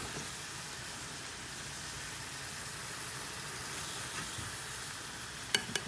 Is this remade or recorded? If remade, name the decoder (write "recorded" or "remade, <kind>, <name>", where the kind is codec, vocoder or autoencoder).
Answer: recorded